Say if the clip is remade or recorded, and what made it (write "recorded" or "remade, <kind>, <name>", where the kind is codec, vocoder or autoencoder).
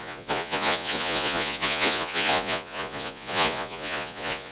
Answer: remade, vocoder, Vocos